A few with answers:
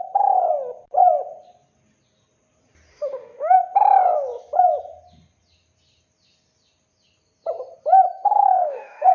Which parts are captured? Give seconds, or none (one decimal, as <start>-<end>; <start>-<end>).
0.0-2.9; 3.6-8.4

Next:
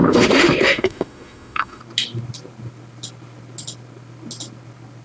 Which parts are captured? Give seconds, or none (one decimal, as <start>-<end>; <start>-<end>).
1.8-5.0

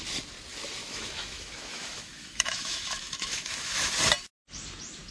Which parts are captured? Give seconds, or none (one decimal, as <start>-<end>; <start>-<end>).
0.0-0.8; 3.9-5.1

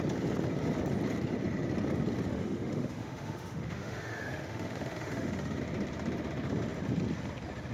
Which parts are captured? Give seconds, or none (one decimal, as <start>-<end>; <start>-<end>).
0.0-2.3; 5.6-7.7